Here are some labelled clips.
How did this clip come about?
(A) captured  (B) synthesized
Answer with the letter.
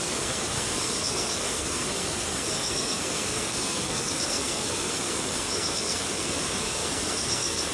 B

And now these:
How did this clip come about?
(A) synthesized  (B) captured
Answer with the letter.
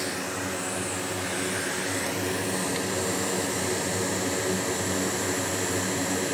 B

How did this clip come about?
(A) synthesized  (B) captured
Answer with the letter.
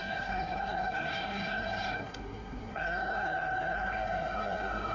A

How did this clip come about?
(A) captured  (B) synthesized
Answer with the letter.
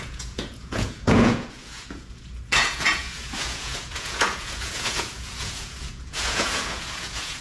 B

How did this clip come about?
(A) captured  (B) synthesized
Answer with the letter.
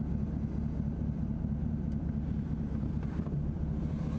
B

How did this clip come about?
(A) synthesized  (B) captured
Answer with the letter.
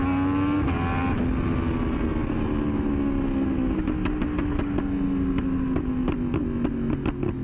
B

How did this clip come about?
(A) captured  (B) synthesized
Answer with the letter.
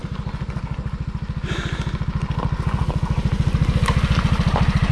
A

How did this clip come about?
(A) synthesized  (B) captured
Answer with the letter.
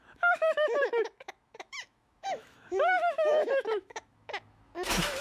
A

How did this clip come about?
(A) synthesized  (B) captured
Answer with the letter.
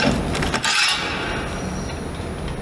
B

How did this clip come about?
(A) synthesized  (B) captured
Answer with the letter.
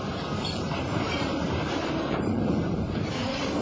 A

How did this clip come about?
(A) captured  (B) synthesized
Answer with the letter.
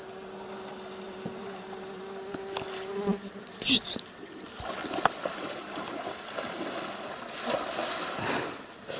A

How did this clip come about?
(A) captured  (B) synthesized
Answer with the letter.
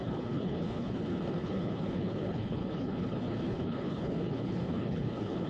B